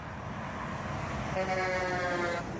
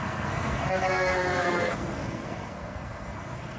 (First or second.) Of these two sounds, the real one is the first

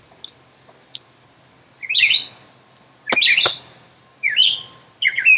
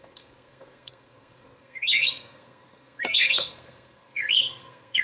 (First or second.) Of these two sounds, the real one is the first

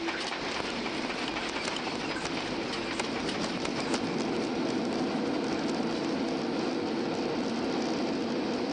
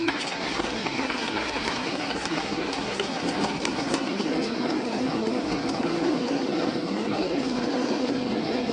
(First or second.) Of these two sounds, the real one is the first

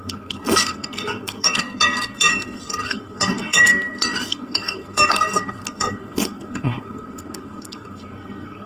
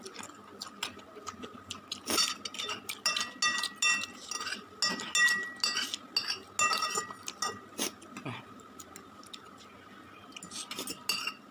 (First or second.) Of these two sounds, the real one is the second